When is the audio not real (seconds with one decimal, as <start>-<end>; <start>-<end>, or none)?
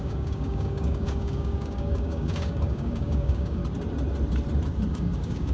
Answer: 0.0-3.6; 4.9-5.5